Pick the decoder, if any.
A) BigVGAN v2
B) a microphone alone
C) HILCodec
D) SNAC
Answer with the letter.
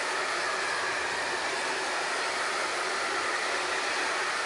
B